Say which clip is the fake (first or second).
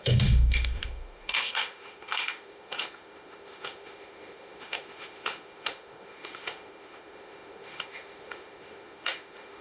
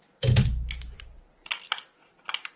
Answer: first